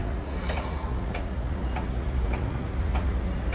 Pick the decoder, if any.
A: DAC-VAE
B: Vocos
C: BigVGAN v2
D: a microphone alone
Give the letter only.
B